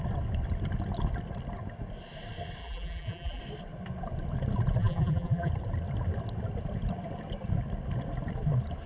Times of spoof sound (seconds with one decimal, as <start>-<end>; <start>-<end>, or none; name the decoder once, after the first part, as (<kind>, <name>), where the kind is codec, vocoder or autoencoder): 2.6-3.4 (vocoder, BigVGAN v2); 4.8-5.5